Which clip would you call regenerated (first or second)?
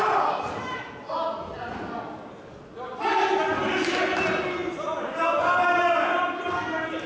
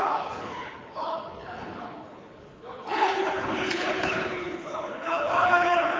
second